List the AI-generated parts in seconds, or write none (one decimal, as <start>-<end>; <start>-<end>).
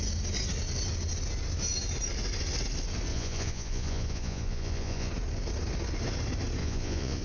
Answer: 3.1-5.1; 6.6-7.2